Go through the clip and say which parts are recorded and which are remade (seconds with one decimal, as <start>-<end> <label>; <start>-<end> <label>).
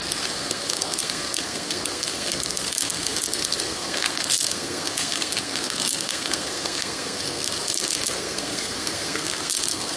0.0-10.0 remade